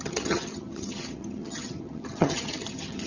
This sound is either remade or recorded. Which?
remade